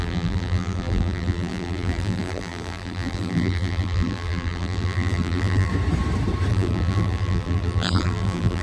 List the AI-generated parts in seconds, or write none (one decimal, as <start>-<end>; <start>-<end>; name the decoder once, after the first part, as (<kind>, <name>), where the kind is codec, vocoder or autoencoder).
0.0-5.7 (vocoder, BigVGAN v2); 6.5-8.6